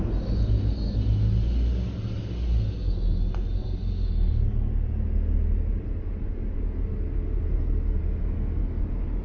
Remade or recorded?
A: recorded